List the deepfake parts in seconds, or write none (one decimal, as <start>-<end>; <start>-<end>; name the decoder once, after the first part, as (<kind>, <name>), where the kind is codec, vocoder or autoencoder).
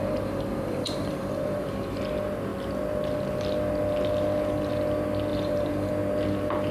0.0-2.0 (vocoder, BigVGAN v2); 5.3-5.9